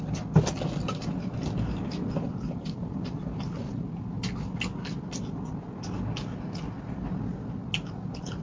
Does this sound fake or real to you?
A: real